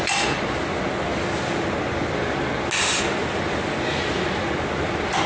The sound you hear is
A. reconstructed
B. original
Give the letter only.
B